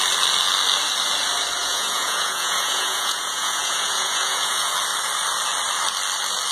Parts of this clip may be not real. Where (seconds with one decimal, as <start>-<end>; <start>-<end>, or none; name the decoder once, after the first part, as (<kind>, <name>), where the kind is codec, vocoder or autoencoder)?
1.6-4.7 (vocoder, Vocos)